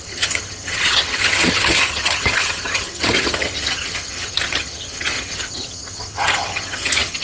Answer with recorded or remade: remade